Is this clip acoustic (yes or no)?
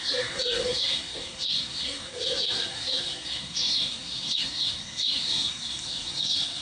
no